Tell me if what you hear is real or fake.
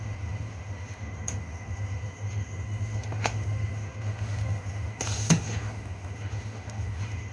fake